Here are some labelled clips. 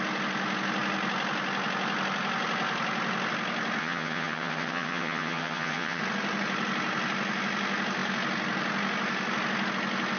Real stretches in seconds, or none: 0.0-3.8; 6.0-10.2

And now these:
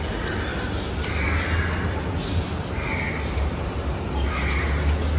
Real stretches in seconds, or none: 0.0-5.2